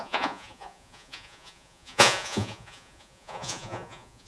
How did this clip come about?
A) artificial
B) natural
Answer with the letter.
A